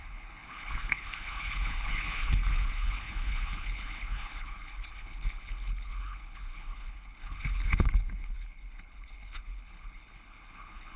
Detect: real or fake fake